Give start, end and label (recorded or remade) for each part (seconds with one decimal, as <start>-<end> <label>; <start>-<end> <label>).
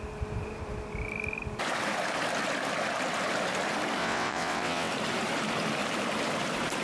0.0-4.0 recorded; 4.0-4.9 remade; 4.9-6.8 recorded